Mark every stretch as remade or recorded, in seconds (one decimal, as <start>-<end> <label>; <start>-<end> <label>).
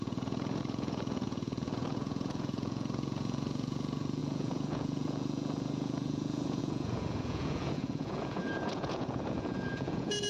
0.0-10.3 remade